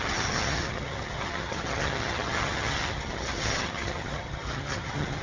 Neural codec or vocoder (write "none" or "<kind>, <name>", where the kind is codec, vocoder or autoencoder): vocoder, HiFi-GAN